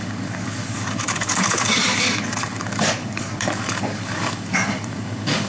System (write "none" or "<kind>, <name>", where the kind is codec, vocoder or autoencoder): codec, DAC